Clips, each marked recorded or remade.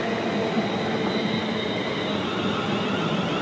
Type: recorded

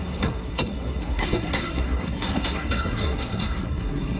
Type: remade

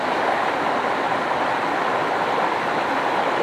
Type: recorded